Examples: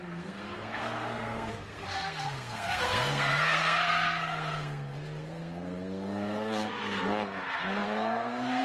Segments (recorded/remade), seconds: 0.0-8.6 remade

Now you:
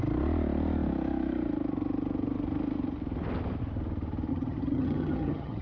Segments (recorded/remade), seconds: 0.0-4.3 recorded; 4.3-5.6 remade

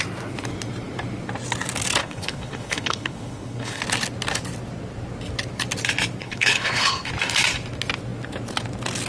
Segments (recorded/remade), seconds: 0.0-2.0 recorded; 2.0-3.8 remade; 3.8-6.2 recorded; 6.2-7.1 remade; 7.1-9.1 recorded

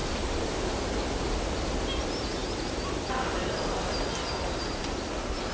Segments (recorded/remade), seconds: 0.0-0.5 remade; 0.5-2.4 recorded; 2.4-4.8 remade; 4.8-5.5 recorded

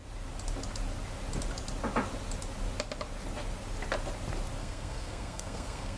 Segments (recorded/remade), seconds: 0.0-4.6 recorded; 4.6-6.0 remade

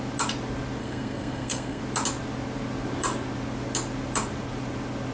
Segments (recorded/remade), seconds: 0.0-0.8 recorded; 0.8-1.8 remade; 1.8-5.1 recorded

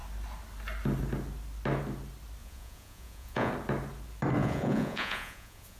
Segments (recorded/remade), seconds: 0.0-2.4 recorded; 2.4-3.5 remade; 3.5-4.4 recorded; 4.4-5.8 remade

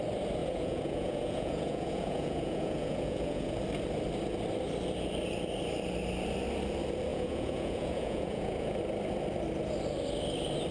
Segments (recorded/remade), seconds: 0.0-0.4 recorded; 0.4-3.6 remade; 3.6-7.1 recorded; 7.1-8.8 remade; 8.8-10.7 recorded